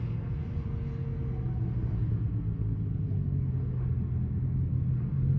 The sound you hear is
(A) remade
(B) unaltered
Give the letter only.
B